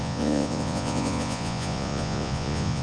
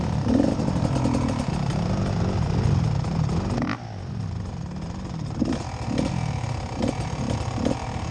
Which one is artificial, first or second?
first